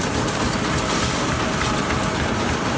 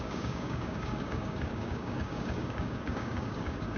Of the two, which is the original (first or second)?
first